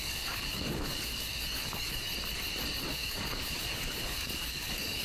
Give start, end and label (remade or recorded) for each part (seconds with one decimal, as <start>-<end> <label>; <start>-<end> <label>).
0.0-2.1 remade; 2.1-2.9 recorded; 2.9-5.0 remade